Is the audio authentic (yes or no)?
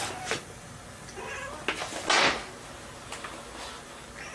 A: yes